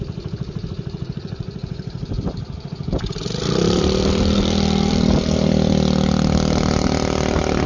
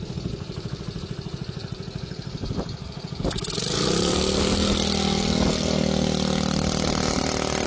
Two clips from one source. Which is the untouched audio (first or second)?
second